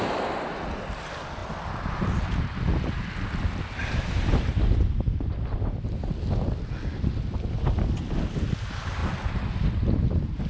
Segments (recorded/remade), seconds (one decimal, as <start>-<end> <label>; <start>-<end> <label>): 0.0-3.8 recorded; 3.8-5.3 remade; 5.3-10.5 recorded